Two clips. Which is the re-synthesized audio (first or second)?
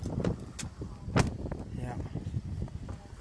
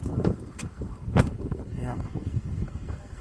second